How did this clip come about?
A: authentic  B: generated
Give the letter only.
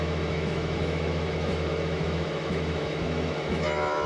B